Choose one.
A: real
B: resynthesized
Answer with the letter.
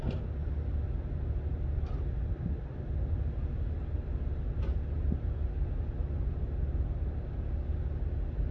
A